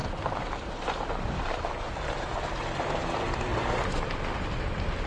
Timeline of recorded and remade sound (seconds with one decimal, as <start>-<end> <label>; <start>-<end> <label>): 0.0-3.5 remade; 3.5-4.5 recorded; 4.5-5.1 remade